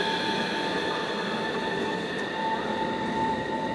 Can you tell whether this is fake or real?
real